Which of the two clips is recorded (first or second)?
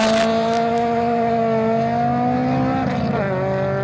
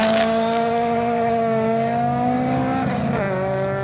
first